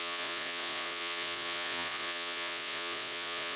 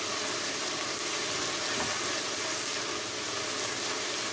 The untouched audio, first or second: second